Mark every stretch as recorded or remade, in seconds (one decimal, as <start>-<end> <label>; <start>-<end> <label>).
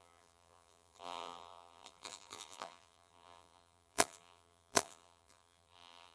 0.0-6.1 remade